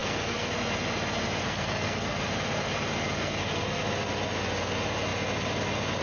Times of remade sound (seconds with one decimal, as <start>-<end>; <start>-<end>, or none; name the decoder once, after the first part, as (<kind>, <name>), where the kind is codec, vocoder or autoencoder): 0.0-0.5 (codec, SNAC); 1.4-2.3; 3.2-3.8